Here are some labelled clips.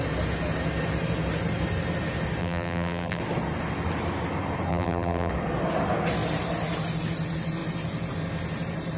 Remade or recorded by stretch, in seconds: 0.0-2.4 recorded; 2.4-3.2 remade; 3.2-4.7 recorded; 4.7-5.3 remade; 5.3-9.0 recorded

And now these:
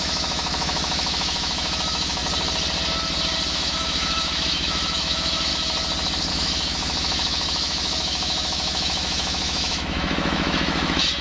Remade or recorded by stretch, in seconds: 0.0-2.2 remade; 2.2-3.5 recorded; 3.5-5.5 remade; 5.5-6.3 recorded; 6.3-11.2 remade

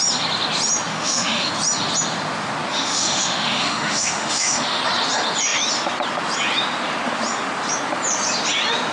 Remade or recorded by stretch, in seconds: 0.0-0.9 recorded; 0.9-1.5 remade; 1.5-2.7 recorded; 2.7-4.8 remade; 4.8-8.9 recorded

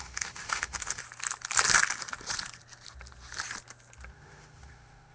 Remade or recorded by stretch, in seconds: 0.0-1.0 remade; 1.0-4.1 recorded; 4.1-5.1 remade

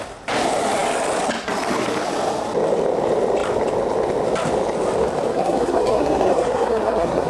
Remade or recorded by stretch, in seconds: 0.0-5.3 recorded; 5.3-7.3 remade

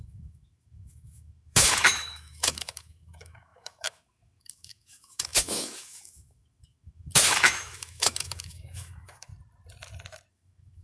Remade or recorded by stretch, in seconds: 0.0-9.3 remade; 9.3-10.3 recorded; 10.3-10.8 remade

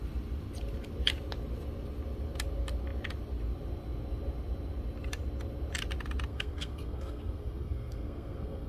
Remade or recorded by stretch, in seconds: 0.0-6.3 recorded; 6.3-8.7 remade